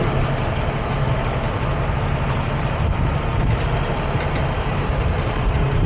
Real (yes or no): no